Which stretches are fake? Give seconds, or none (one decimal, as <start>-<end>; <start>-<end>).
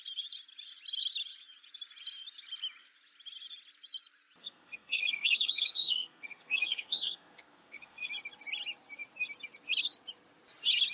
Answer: 4.4-8.1